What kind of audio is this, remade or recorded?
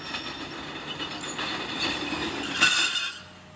recorded